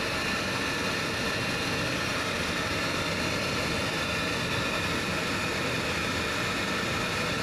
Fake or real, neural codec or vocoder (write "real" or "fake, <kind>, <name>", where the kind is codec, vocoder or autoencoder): real